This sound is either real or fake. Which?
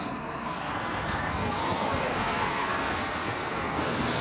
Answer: fake